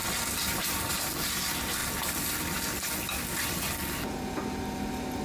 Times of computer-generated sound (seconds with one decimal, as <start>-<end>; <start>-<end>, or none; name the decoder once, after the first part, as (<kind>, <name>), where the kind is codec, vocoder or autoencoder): 0.0-0.9 (vocoder, BigVGAN v2)